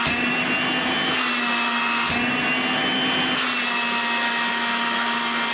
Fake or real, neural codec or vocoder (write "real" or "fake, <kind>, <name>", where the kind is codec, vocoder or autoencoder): real